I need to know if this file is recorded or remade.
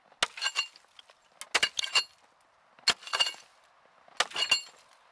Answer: recorded